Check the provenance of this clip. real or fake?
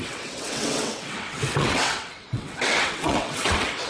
fake